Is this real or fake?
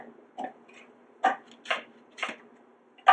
real